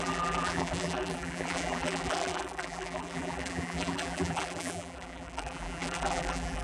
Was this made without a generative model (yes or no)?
no